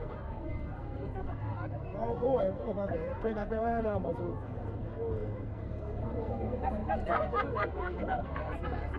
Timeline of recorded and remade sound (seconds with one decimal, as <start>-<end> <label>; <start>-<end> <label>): 0.0-9.0 remade